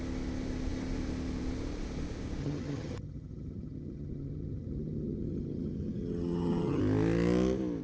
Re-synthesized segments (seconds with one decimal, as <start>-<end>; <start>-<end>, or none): 2.4-6.8